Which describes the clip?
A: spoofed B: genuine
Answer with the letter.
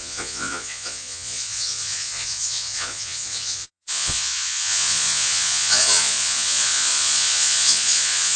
A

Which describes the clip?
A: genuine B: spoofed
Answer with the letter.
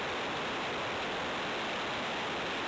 A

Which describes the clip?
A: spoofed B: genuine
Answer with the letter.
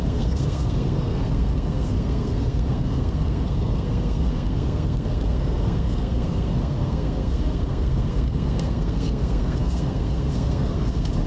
A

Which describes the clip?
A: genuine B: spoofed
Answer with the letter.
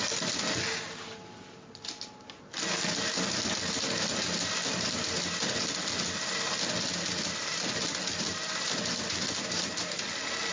A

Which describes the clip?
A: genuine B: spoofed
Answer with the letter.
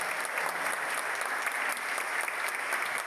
A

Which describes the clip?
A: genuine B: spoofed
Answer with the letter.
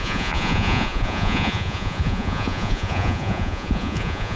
B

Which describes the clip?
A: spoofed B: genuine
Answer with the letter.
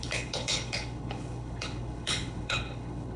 A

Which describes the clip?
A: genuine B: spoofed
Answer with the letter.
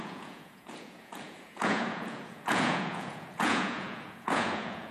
B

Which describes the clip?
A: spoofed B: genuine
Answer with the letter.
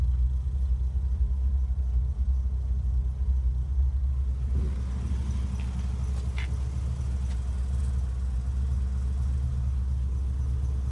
B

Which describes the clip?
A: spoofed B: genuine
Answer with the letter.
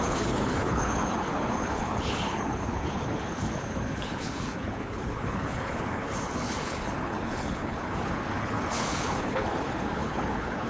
A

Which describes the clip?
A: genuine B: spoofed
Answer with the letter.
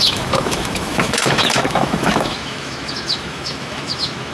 B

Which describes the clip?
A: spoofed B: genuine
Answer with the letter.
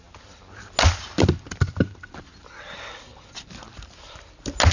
B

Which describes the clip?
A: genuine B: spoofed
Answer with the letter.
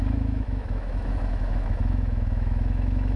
B